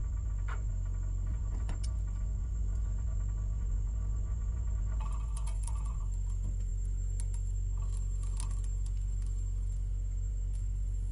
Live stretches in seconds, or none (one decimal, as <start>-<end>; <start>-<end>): 0.7-1.3; 6.0-11.1